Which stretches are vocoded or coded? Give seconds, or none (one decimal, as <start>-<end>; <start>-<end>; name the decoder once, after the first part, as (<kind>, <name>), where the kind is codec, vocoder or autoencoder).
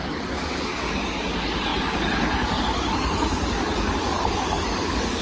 0.0-5.2 (codec, DAC)